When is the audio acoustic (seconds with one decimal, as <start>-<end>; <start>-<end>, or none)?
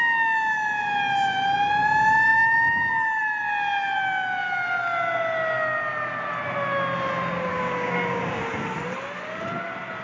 0.0-7.5; 8.4-10.0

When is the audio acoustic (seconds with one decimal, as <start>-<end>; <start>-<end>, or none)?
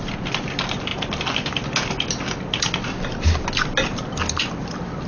0.0-5.1